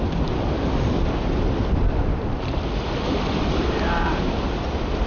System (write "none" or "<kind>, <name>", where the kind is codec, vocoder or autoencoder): none